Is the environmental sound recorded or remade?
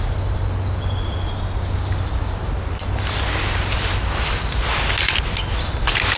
recorded